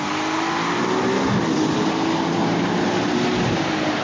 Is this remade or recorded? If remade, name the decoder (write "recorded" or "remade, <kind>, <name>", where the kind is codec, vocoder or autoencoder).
recorded